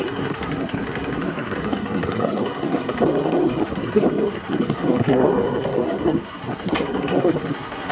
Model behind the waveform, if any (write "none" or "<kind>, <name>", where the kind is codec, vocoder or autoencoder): codec, SNAC